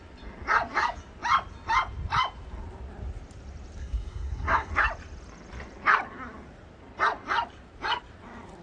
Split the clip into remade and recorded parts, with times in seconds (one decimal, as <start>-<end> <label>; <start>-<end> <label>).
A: 0.0-3.8 recorded; 3.8-4.7 remade; 4.7-8.6 recorded